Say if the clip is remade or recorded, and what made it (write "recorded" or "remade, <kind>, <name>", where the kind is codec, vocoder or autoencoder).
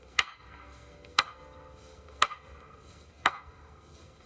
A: remade, codec, SNAC